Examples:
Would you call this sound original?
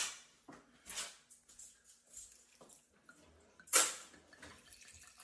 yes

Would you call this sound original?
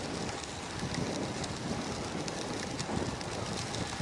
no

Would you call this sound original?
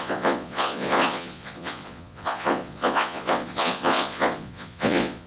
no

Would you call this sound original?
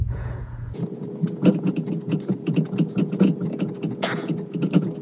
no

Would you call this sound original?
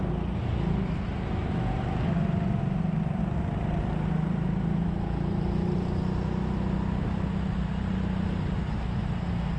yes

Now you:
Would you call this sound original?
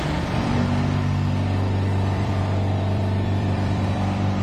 no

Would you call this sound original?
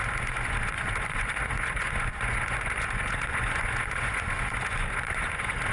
no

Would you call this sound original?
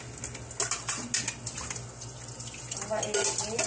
yes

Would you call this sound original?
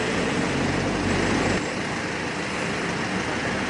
yes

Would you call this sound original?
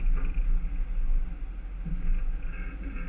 yes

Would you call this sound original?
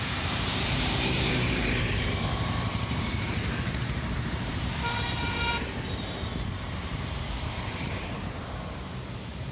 no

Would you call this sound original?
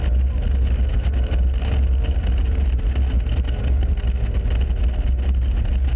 yes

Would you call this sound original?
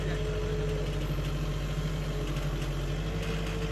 yes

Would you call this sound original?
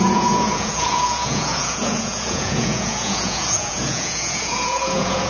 no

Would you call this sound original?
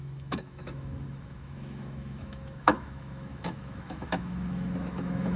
no